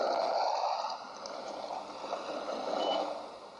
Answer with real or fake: real